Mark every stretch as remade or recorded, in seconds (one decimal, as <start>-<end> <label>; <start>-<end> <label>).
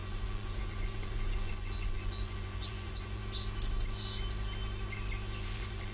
0.0-3.2 remade; 3.2-5.4 recorded; 5.4-5.9 remade